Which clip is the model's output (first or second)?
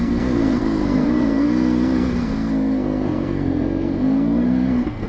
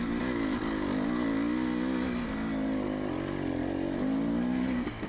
first